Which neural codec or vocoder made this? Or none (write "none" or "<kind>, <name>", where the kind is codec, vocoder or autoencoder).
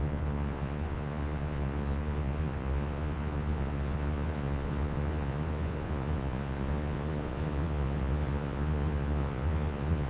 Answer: vocoder, Vocos